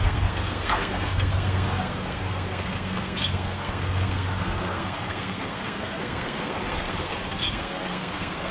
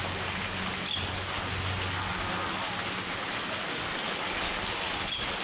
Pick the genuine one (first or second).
second